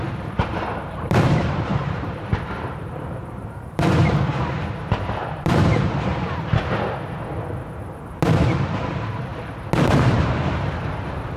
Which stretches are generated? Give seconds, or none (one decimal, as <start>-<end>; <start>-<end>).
0.0-6.1; 8.9-9.3; 9.8-11.4